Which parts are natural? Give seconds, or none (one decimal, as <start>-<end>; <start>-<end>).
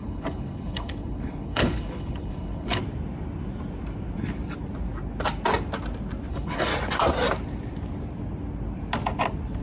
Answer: 2.8-6.3; 6.7-9.6